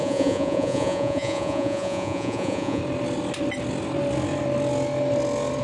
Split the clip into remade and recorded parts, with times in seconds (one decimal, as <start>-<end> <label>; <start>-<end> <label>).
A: 0.0-2.8 remade; 2.8-5.6 recorded